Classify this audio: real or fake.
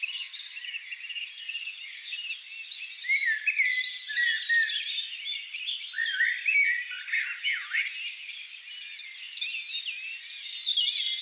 real